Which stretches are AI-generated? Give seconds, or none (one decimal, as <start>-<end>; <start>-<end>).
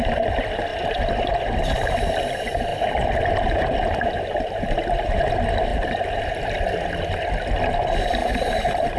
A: 0.7-2.0; 2.7-5.3; 5.7-6.2; 8.2-9.0